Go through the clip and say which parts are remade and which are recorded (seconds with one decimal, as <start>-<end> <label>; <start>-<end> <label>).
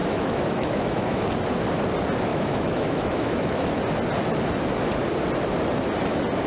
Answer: 0.0-1.3 remade; 1.3-2.3 recorded; 2.3-3.8 remade; 3.8-6.5 recorded